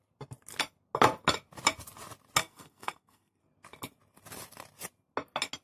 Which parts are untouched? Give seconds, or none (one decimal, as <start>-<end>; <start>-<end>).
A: 0.0-2.4; 3.4-5.6